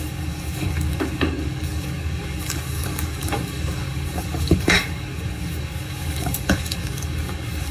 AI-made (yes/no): yes